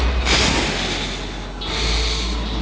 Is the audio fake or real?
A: real